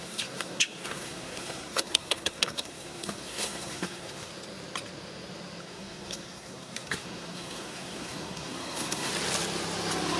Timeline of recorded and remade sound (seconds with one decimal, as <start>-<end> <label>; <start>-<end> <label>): 0.0-4.3 remade; 4.3-5.6 recorded; 5.6-9.1 remade; 9.1-10.2 recorded